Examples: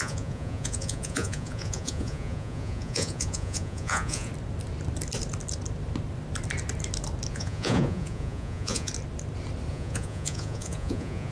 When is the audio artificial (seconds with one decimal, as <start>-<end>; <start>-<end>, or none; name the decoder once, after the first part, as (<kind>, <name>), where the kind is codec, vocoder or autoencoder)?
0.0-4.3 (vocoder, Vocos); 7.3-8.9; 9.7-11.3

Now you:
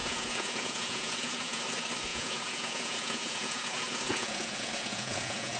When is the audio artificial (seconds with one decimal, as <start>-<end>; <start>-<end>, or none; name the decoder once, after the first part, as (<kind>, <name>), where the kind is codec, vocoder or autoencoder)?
0.0-1.6 (vocoder, Vocos); 2.1-5.6

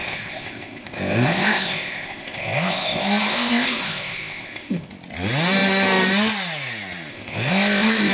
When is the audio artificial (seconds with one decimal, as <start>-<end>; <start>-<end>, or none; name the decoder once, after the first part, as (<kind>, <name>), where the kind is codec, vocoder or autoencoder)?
0.0-4.9 (codec, ZipCodec); 7.1-8.1